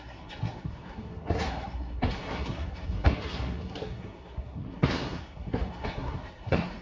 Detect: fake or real fake